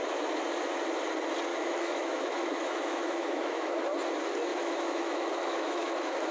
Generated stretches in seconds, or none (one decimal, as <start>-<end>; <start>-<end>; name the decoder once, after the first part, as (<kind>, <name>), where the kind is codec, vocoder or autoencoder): 1.5-3.8 (autoencoder, DAC-VAE); 4.5-6.3